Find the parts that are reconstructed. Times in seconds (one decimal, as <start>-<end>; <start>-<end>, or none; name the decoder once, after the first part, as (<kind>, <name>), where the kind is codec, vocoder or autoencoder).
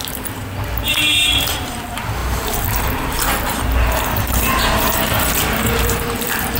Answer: 0.0-0.4 (vocoder, BigVGAN v2); 1.4-6.6